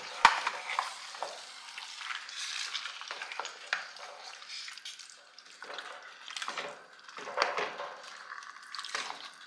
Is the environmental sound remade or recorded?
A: remade